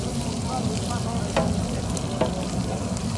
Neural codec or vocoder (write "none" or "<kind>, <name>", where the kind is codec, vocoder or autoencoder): none